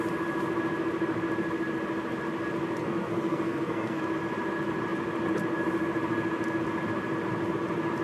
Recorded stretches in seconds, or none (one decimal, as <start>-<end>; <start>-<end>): 0.0-2.8; 4.0-8.0